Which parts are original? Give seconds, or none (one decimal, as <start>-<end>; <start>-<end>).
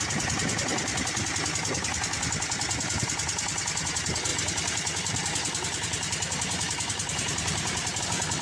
0.0-4.3; 8.0-8.4